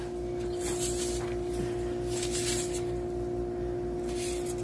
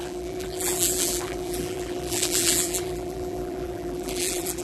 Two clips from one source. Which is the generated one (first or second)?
second